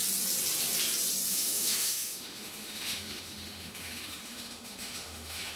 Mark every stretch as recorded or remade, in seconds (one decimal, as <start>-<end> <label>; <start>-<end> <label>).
0.0-1.3 recorded; 1.3-5.6 remade